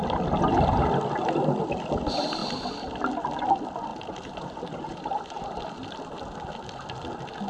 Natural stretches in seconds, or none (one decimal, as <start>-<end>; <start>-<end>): 0.0-3.9; 5.5-7.5